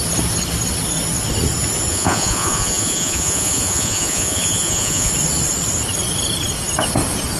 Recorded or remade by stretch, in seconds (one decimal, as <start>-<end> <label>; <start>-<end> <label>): 0.0-1.9 recorded; 1.9-5.1 remade; 5.1-7.4 recorded